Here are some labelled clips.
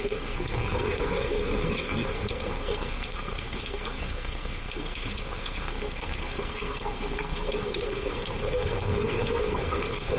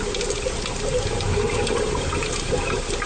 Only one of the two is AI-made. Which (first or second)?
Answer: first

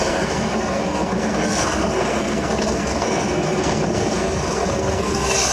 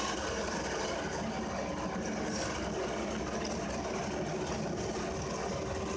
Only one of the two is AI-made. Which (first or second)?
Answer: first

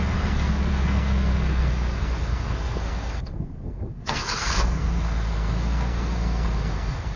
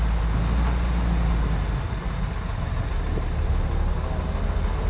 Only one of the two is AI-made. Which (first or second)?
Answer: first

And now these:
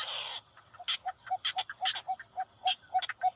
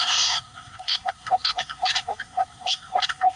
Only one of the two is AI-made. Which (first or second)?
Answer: second